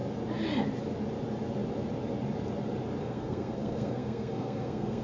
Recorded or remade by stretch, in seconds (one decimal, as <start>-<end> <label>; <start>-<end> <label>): 0.0-3.0 recorded; 3.0-5.0 remade